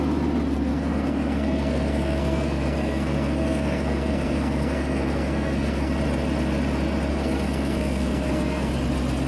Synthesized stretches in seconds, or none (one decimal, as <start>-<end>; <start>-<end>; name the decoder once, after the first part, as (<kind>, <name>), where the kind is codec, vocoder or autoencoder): 0.7-5.9 (codec, SNAC); 7.1-8.7